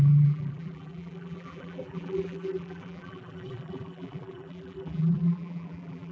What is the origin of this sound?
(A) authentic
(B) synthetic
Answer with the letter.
B